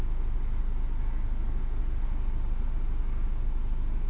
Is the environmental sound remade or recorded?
recorded